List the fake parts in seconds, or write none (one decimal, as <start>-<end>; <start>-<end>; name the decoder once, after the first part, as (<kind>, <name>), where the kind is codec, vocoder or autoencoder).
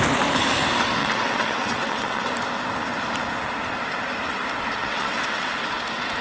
1.0-2.2 (vocoder, WaveNeXt); 4.8-5.5